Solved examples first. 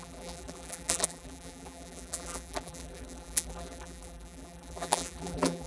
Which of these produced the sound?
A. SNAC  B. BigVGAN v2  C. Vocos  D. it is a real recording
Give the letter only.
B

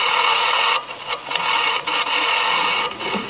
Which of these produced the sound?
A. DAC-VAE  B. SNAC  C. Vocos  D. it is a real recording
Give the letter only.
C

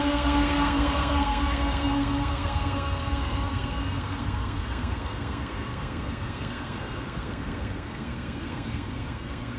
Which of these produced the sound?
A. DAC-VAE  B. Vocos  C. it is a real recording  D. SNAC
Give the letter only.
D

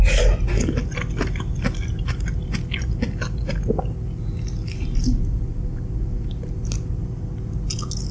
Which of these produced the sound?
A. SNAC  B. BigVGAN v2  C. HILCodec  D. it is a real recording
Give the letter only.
D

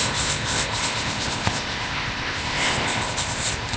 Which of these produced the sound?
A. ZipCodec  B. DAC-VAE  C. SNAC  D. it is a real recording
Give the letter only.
A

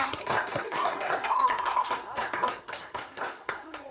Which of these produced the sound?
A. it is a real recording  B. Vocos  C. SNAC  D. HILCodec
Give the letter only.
C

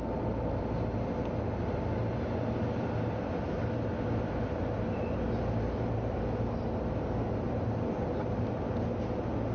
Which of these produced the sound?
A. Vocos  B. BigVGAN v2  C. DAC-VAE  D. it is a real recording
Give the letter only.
D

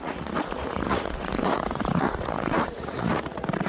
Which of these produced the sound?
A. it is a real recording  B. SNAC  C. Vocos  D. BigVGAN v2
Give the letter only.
C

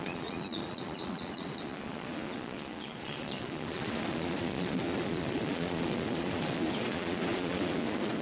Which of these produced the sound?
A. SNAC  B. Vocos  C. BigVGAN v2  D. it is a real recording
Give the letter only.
B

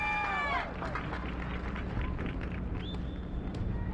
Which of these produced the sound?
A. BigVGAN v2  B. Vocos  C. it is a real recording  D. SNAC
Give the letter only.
C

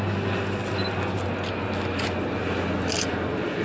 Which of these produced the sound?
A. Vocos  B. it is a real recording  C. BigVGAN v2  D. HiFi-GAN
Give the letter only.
B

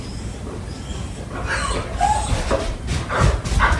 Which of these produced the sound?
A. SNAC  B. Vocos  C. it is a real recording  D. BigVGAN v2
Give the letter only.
C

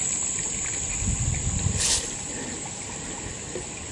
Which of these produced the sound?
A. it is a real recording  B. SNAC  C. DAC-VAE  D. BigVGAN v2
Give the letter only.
A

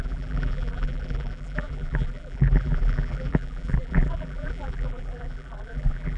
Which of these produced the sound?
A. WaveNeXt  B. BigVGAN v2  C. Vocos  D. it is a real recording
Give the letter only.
B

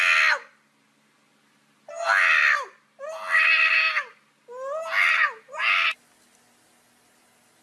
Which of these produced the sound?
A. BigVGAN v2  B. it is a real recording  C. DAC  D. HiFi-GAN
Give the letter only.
B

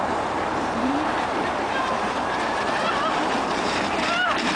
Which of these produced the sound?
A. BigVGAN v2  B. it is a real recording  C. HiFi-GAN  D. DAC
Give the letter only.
A